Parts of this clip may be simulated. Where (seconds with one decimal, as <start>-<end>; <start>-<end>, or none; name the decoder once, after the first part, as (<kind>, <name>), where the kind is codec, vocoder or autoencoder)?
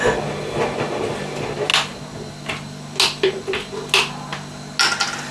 none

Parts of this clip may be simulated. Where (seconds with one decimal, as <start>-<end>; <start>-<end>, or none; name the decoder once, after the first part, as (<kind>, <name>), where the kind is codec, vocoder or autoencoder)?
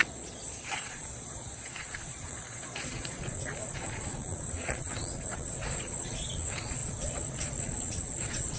0.0-8.6 (vocoder, Vocos)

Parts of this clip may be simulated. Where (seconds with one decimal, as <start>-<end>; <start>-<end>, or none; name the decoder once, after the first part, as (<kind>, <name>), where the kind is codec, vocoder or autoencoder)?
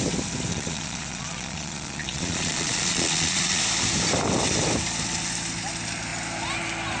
0.5-3.6 (vocoder, Vocos)